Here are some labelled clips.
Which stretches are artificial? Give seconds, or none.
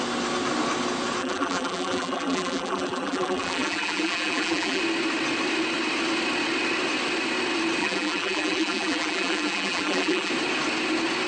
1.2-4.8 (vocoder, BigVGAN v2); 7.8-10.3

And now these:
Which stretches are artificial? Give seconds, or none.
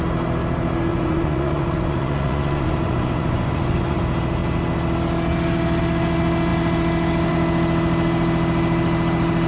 0.9-4.0 (vocoder, Vocos)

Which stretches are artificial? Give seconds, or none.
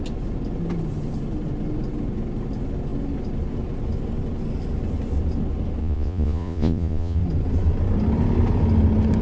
5.8-7.2 (vocoder, Vocos)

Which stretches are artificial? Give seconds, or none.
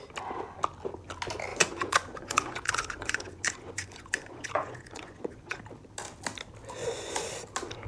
1.5-5.6 (vocoder, Vocos); 6.8-7.3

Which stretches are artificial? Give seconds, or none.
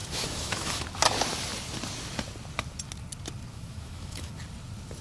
0.0-0.8 (autoencoder, DAC-VAE); 3.5-4.3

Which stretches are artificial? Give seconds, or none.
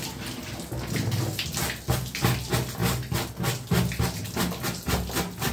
none